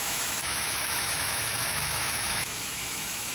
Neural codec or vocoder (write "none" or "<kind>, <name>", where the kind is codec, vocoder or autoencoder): autoencoder, DAC-VAE